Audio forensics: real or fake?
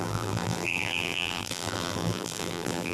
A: fake